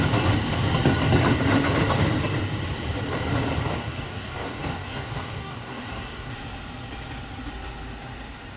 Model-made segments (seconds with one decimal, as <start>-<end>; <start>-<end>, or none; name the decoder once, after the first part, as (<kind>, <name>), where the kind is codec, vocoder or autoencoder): 3.8-6.3 (codec, DAC)